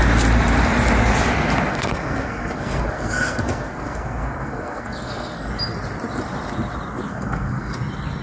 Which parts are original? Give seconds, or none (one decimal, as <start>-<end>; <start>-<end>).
0.0-1.7; 5.5-7.1; 7.7-8.2